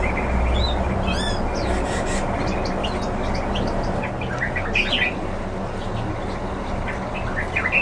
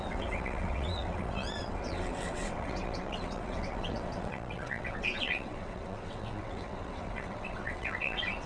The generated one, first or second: second